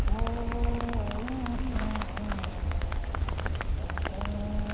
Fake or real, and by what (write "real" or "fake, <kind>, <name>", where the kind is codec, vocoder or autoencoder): real